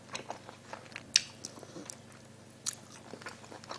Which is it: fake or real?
real